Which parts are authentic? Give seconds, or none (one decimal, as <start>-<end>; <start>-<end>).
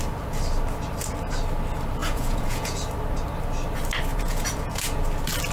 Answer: 0.0-2.0; 2.8-4.1; 5.0-5.5